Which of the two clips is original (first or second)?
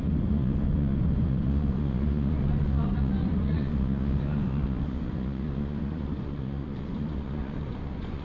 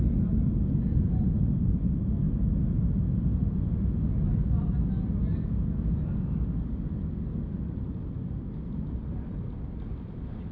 second